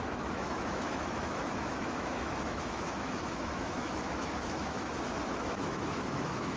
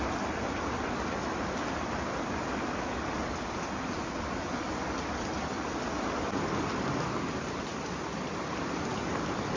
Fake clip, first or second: first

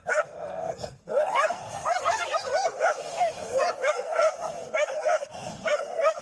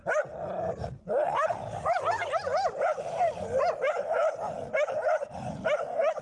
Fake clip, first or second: first